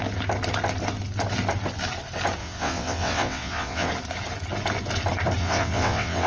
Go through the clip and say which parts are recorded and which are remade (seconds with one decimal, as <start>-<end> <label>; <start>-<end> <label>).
0.0-2.4 recorded; 2.4-3.9 remade; 3.9-5.4 recorded; 5.4-6.3 remade